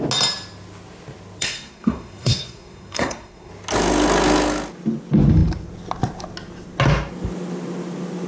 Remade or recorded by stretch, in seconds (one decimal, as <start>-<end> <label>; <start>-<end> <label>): 0.0-1.4 recorded; 1.4-3.5 remade; 3.5-8.3 recorded